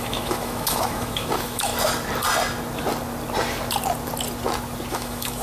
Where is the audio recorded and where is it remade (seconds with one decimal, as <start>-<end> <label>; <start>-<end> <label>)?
0.0-1.7 remade; 1.7-4.9 recorded; 4.9-5.4 remade